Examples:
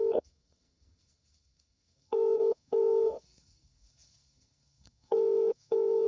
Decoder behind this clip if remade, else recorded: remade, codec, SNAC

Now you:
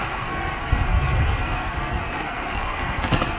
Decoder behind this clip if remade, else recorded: remade, codec, SNAC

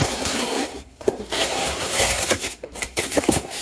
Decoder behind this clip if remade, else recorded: remade, codec, SNAC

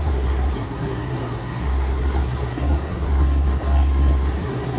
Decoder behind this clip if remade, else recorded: remade, codec, SNAC